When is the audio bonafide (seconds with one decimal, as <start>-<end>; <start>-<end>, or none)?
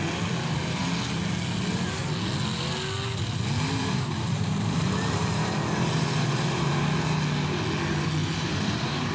0.0-3.8; 6.7-8.2